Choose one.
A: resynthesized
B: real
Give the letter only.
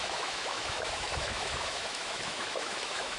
A